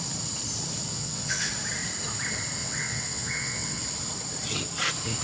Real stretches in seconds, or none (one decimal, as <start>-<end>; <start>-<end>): 0.0-0.9; 1.5-2.6; 3.8-5.2